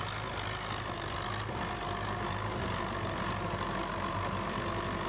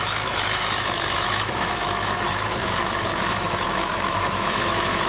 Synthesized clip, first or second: second